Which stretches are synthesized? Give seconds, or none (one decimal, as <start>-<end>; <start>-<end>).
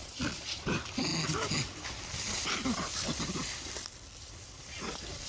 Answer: 0.0-0.6